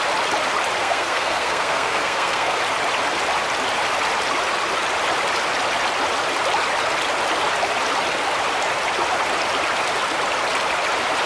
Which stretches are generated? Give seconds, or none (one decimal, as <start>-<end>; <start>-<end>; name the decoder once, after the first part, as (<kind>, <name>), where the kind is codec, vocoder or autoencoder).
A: 0.8-2.6 (codec, SNAC)